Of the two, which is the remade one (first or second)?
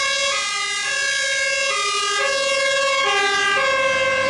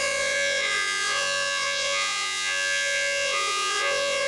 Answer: second